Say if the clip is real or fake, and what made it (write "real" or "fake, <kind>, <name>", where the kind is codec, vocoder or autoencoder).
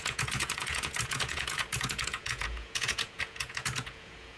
fake, vocoder, Vocos